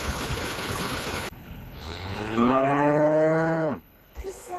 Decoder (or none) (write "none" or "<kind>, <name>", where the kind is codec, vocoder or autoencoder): codec, HILCodec